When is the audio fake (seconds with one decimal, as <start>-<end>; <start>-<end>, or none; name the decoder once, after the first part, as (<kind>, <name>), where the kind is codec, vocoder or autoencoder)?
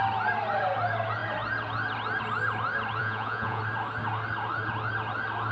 3.0-3.6 (vocoder, Vocos)